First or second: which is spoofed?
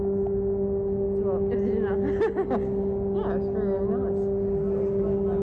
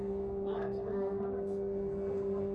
second